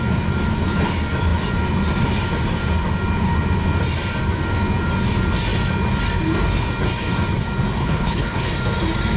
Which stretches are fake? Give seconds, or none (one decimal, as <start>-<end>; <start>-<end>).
7.8-8.5